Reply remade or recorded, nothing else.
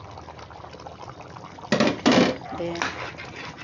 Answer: recorded